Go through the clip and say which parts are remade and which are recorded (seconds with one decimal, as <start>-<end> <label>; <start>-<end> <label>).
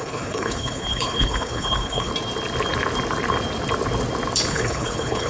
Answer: 0.0-2.1 remade; 2.1-4.5 recorded; 4.5-5.3 remade